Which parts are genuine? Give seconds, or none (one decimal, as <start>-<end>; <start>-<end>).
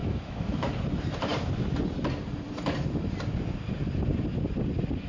0.7-5.1